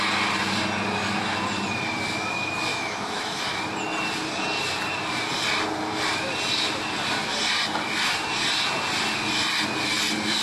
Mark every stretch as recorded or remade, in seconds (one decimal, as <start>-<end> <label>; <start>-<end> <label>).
0.0-2.7 recorded; 2.7-3.6 remade; 3.6-10.4 recorded